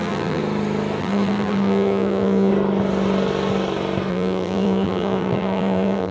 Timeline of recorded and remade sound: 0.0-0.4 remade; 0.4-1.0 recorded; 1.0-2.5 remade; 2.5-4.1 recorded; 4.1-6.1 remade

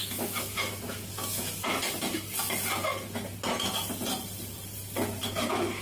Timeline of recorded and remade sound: 0.0-1.7 remade; 1.7-5.2 recorded; 5.2-5.8 remade

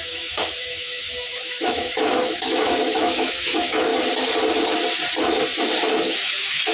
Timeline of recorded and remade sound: 0.0-3.9 remade; 3.9-6.0 recorded; 6.0-6.7 remade

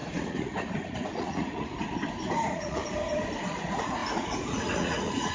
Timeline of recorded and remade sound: 0.0-1.7 remade; 1.7-2.3 recorded; 2.3-2.8 remade; 2.8-3.6 recorded; 3.6-5.3 remade

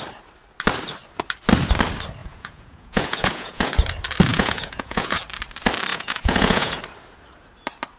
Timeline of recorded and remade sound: 0.0-2.2 recorded; 2.2-3.7 remade; 3.7-4.3 recorded; 4.3-5.2 remade; 5.2-5.9 recorded; 5.9-6.8 remade; 6.8-8.0 recorded

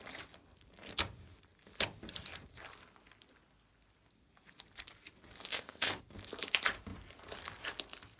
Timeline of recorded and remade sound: 0.0-5.5 recorded; 5.5-6.0 remade; 6.0-8.2 recorded